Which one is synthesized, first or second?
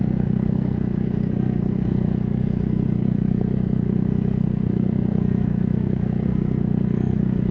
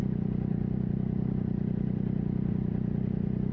first